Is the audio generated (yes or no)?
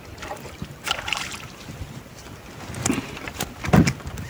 no